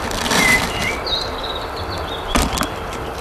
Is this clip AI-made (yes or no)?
yes